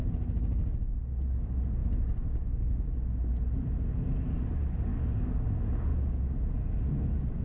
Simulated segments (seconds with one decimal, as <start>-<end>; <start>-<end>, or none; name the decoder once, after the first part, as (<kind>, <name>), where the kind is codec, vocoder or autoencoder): 4.9-5.5 (codec, DAC)